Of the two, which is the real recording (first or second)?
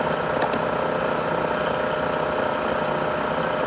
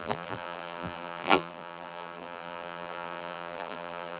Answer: first